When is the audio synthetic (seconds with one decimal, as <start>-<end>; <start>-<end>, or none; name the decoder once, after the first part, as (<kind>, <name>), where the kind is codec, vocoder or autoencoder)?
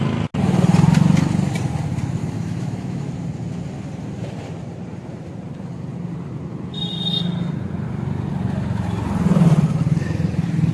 2.2-3.0 (autoencoder, DAC-VAE)